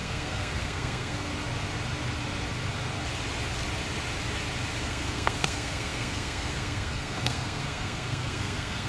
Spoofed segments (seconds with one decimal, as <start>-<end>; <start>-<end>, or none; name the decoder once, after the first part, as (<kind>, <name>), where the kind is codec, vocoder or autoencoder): 0.0-1.3 (codec, SNAC); 4.8-8.9